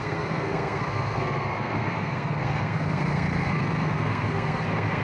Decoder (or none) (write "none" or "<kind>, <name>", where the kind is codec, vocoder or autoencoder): codec, SNAC